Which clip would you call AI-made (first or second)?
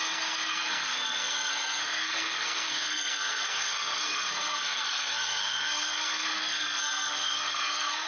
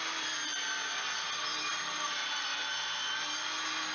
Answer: first